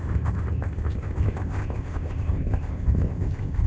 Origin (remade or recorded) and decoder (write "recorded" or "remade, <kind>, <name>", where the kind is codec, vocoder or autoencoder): remade, codec, ZipCodec